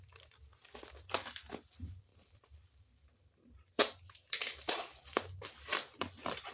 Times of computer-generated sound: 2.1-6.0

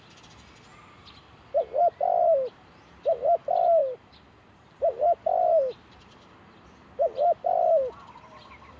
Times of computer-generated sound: 3.8-4.8